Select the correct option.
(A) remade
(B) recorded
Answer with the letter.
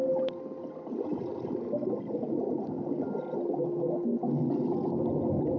B